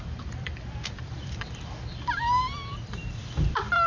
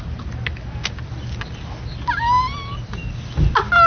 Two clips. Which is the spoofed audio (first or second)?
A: first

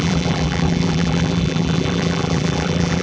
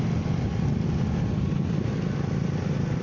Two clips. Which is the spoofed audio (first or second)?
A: first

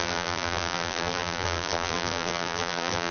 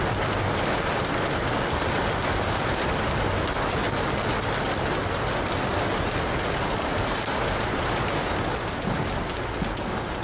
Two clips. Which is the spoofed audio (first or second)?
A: first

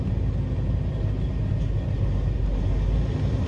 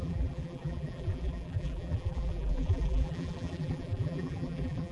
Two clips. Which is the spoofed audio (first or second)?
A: second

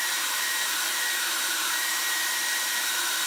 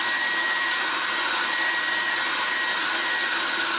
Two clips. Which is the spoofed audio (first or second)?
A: first